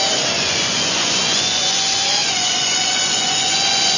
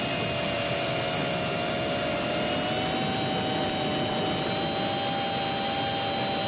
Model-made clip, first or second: first